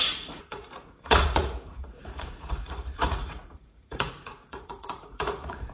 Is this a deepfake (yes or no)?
yes